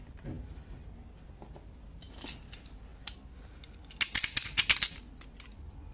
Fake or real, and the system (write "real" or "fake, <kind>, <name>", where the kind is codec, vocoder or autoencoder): real